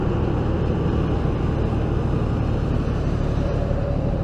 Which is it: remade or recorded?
recorded